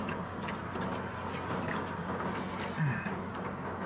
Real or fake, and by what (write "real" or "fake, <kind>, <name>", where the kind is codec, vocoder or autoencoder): real